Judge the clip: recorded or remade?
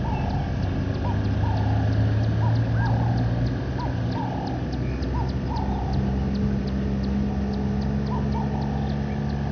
recorded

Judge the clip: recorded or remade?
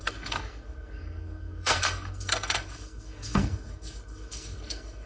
remade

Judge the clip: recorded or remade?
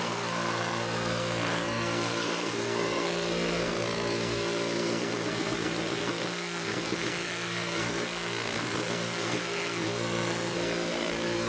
remade